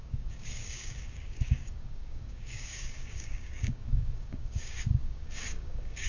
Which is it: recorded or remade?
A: remade